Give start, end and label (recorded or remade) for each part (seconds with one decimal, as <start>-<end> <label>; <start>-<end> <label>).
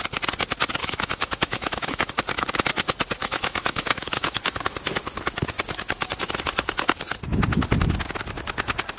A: 0.0-0.8 recorded; 0.8-2.1 remade; 2.1-3.2 recorded; 3.2-4.4 remade; 4.4-9.0 recorded